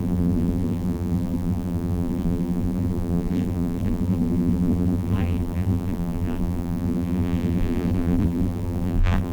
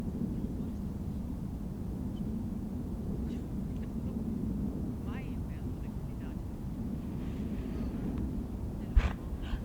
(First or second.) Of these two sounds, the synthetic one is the first